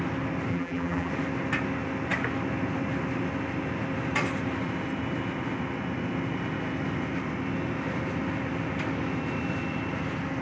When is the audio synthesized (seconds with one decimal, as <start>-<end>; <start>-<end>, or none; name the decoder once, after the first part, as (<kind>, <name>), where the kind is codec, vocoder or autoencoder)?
0.5-1.1 (vocoder, BigVGAN v2)